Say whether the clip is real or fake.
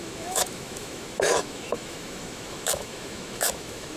fake